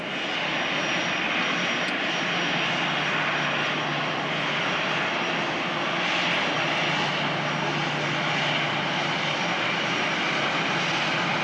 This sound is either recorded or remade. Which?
recorded